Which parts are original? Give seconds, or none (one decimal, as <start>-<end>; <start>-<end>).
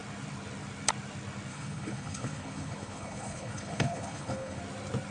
0.0-1.5; 4.6-5.1